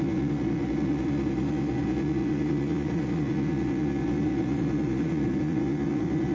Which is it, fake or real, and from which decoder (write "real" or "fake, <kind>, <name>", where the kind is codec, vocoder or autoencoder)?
fake, vocoder, Vocos